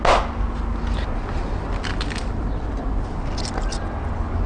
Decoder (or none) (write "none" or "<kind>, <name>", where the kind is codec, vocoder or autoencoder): none